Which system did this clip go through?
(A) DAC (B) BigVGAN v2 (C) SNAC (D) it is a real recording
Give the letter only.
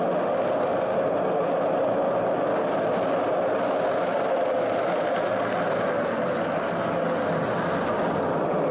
D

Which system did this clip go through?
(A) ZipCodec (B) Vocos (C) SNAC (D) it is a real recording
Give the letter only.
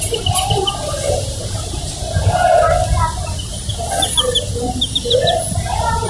D